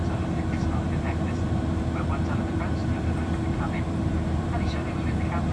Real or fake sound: fake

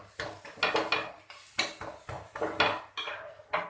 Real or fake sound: real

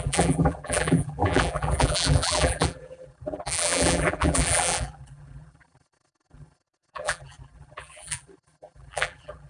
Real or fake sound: fake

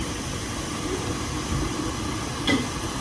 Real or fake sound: real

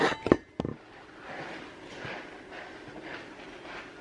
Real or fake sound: real